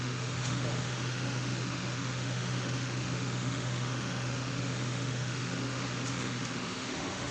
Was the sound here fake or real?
fake